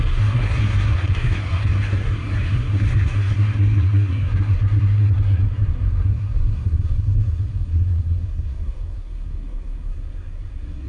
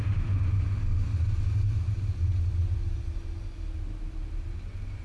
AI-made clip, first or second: first